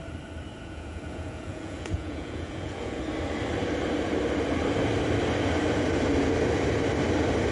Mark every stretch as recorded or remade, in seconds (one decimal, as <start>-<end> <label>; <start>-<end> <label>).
0.0-0.6 recorded; 0.6-3.0 remade; 3.0-7.5 recorded